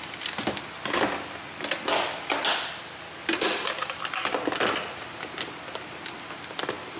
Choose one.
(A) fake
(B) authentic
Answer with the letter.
B